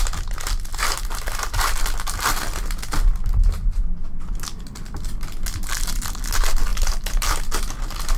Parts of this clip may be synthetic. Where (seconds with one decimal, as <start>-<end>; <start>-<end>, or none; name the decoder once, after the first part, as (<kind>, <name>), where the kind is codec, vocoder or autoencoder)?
0.7-1.8 (vocoder, BigVGAN v2); 6.7-7.4